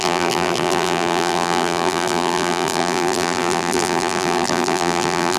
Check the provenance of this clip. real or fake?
fake